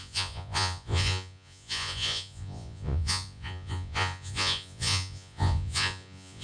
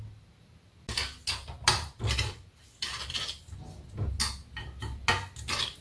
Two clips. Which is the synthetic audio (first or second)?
first